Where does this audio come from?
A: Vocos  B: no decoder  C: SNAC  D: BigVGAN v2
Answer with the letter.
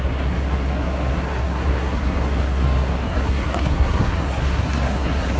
C